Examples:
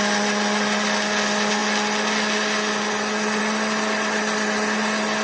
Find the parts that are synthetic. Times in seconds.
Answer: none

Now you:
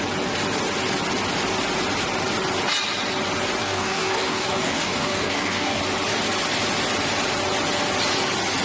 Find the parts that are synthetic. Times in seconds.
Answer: 3.6-5.8 (codec, DAC)